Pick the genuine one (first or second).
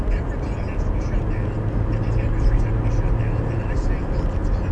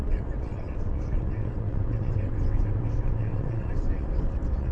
first